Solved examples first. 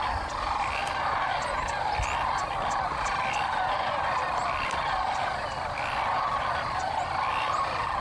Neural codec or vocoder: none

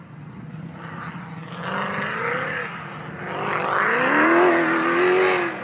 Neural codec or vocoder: none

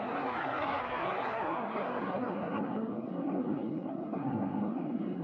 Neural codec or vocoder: codec, SNAC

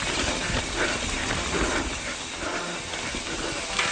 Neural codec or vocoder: none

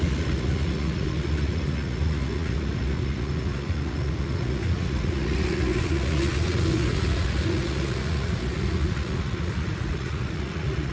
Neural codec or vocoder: vocoder, Vocos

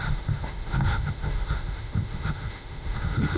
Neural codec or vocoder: autoencoder, DAC-VAE